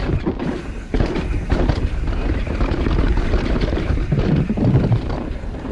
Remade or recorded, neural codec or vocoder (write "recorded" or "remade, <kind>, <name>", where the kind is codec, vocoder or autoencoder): remade, vocoder, BigVGAN v2